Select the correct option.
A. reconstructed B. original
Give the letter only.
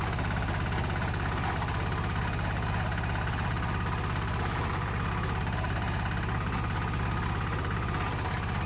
B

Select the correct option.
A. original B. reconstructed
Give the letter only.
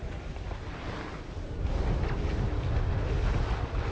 A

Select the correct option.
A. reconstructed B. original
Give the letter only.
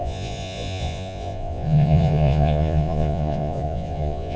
A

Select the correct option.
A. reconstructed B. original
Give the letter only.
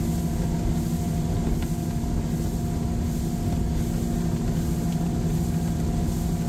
B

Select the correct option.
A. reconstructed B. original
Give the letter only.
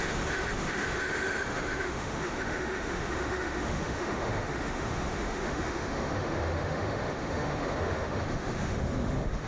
A